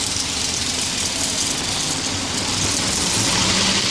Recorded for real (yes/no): yes